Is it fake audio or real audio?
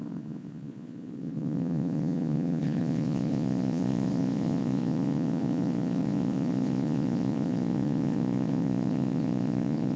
fake